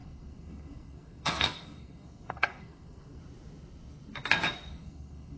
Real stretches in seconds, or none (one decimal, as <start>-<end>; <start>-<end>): 3.2-4.7